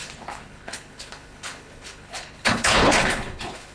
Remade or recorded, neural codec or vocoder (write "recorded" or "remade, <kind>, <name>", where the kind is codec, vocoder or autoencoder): remade, codec, HILCodec